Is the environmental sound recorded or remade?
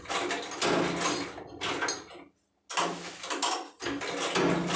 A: recorded